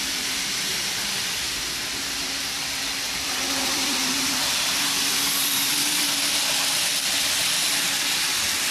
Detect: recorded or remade remade